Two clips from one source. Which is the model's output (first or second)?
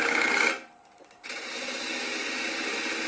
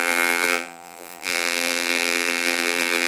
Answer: second